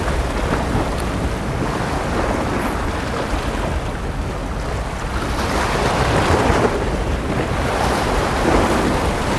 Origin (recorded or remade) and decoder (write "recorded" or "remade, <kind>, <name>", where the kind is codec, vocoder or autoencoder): recorded